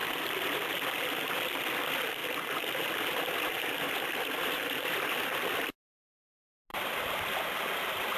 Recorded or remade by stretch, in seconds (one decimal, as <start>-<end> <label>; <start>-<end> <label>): 0.0-2.2 recorded; 2.2-5.1 remade; 5.1-6.7 recorded; 6.7-7.4 remade; 7.4-8.2 recorded